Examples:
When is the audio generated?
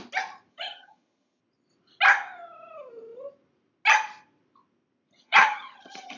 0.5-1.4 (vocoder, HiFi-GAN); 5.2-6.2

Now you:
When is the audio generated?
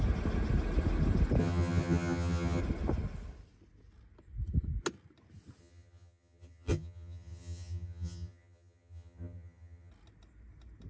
1.4-2.6 (vocoder, HiFi-GAN); 5.6-9.9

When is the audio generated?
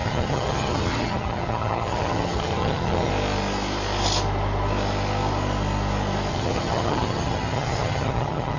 0.0-3.1 (vocoder, HiFi-GAN); 6.3-8.6